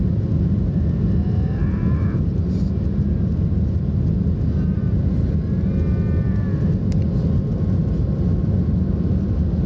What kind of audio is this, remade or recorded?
recorded